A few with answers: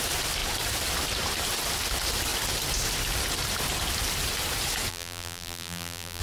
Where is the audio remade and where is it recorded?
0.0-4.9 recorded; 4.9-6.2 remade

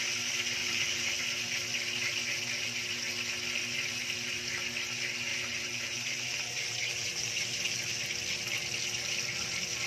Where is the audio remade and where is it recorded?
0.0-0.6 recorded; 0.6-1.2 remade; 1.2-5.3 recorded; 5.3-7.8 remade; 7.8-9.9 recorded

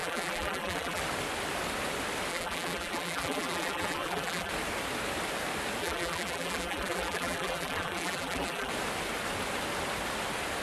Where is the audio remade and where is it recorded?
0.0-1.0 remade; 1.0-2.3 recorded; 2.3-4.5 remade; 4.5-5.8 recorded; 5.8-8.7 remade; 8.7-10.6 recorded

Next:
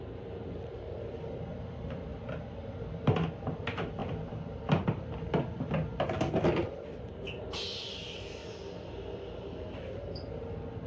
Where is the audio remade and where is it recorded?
0.0-8.4 remade; 8.4-10.9 recorded